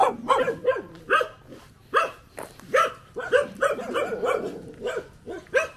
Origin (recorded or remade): recorded